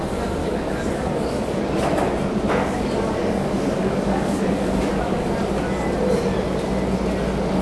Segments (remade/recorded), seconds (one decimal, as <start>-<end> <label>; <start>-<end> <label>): 0.0-0.4 recorded; 0.4-1.6 remade; 1.6-2.6 recorded; 2.6-5.3 remade; 5.3-7.6 recorded